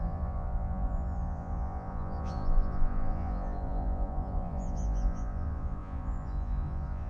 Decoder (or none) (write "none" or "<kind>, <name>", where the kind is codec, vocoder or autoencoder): vocoder, Vocos